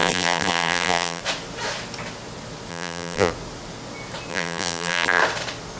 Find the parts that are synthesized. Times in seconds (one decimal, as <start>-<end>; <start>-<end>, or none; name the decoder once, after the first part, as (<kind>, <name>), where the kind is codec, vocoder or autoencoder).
0.0-1.2 (vocoder, BigVGAN v2); 2.7-3.3; 4.3-5.2